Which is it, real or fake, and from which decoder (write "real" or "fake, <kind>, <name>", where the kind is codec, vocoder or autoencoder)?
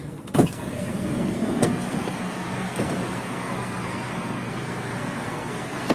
fake, codec, SNAC